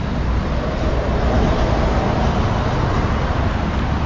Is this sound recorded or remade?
recorded